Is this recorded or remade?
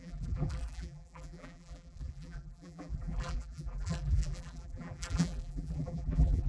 remade